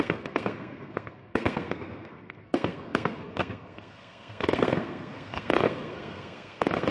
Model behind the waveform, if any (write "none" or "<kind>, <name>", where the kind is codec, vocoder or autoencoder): codec, SNAC